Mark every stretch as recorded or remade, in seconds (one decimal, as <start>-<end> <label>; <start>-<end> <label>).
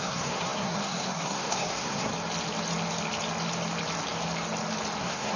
0.0-2.1 remade; 2.1-5.0 recorded; 5.0-5.4 remade